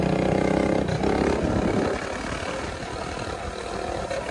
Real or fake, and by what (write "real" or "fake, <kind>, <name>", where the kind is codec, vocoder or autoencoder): real